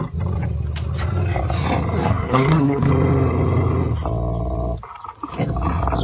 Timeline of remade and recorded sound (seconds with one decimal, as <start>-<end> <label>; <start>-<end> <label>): 0.0-2.0 recorded; 2.0-2.9 remade; 2.9-6.0 recorded